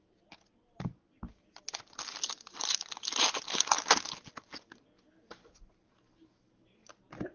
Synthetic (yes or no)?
no